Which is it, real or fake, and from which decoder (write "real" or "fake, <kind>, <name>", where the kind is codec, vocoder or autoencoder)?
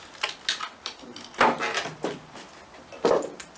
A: real